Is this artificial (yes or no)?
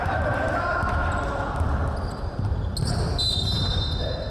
no